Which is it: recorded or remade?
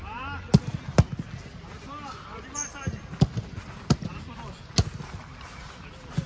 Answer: recorded